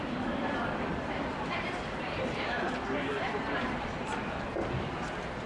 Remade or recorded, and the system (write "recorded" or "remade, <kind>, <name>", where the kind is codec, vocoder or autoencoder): remade, vocoder, BigVGAN v2